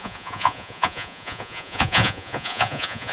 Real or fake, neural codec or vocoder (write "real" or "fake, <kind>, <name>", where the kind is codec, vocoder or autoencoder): fake, vocoder, Vocos